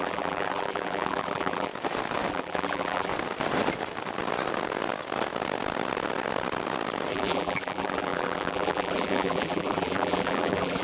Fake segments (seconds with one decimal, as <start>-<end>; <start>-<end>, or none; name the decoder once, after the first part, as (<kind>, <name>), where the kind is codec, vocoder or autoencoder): 0.0-1.7 (vocoder, BigVGAN v2); 2.3-3.1; 7.1-10.8